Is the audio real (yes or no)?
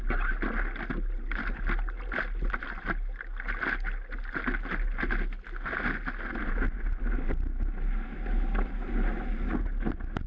yes